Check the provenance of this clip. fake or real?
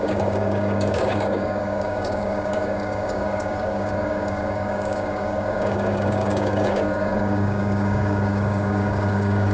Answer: fake